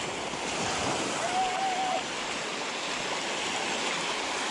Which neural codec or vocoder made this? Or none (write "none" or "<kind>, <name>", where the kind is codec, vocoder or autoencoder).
none